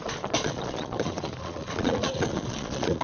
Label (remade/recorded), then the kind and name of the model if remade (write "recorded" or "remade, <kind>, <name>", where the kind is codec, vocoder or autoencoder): remade, vocoder, Vocos